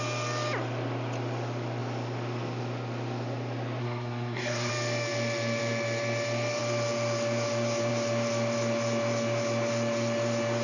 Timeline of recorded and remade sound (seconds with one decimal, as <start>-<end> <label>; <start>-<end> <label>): 0.0-3.8 recorded; 3.8-4.7 remade; 4.7-10.6 recorded